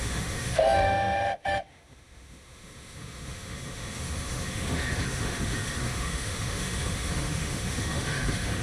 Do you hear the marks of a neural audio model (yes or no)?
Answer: yes